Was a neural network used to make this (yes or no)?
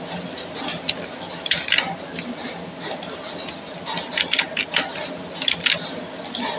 no